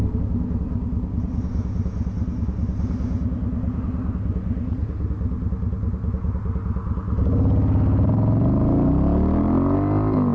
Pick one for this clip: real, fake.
real